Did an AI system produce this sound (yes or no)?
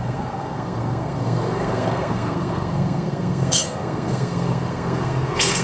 yes